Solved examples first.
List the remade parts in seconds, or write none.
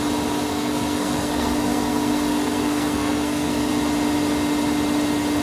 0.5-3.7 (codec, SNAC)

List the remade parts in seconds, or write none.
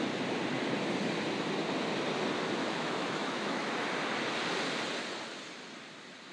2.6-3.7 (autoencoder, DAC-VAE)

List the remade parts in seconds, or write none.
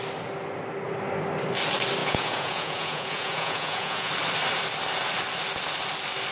2.0-4.1 (vocoder, Vocos)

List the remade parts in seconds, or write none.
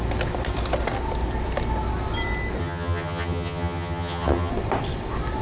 2.6-4.5 (vocoder, HiFi-GAN)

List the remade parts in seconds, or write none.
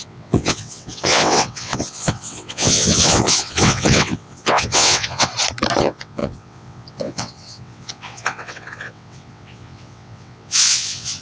0.0-5.3 (vocoder, WaveNeXt); 5.8-11.2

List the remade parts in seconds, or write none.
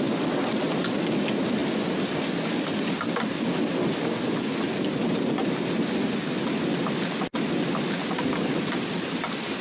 none